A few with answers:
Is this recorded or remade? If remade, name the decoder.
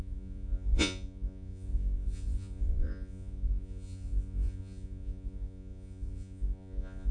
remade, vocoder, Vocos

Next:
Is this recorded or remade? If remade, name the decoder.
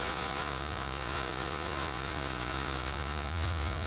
remade, vocoder, Vocos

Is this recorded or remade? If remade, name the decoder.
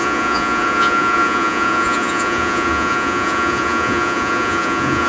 remade, vocoder, Vocos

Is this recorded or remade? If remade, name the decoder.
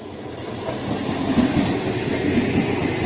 recorded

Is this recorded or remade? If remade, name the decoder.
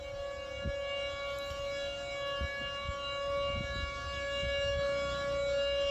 recorded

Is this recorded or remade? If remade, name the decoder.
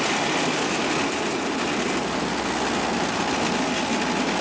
recorded